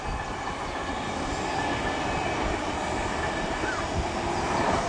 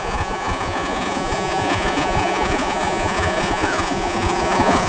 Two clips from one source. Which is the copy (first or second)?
second